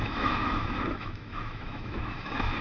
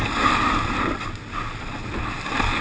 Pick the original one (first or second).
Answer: second